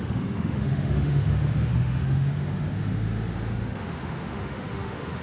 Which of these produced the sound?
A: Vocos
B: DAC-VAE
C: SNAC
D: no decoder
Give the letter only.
B